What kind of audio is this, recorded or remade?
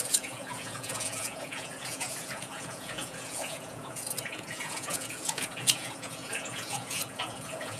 remade